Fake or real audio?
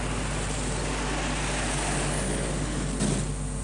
real